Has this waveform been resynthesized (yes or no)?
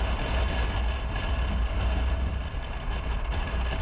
no